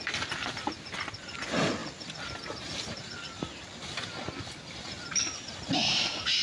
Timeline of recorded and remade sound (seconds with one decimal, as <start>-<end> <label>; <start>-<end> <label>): 0.0-6.4 recorded

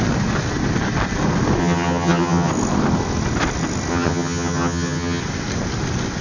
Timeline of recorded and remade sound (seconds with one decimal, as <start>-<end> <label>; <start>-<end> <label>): 0.0-1.6 recorded; 1.6-2.5 remade; 2.5-3.9 recorded; 3.9-5.2 remade; 5.2-6.2 recorded

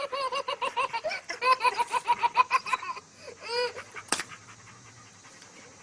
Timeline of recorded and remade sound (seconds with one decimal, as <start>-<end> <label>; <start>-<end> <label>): 0.0-2.1 recorded; 2.1-5.8 remade

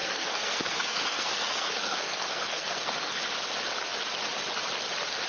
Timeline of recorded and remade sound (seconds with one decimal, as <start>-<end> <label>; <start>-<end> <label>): 0.0-3.2 remade; 3.2-5.3 recorded

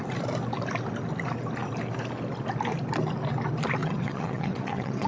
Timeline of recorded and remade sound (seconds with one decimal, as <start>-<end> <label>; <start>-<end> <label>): 0.0-3.8 recorded; 3.8-5.1 remade

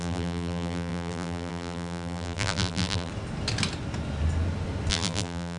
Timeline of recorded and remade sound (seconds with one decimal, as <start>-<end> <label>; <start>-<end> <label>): 0.0-3.1 remade; 3.1-4.9 recorded; 4.9-5.6 remade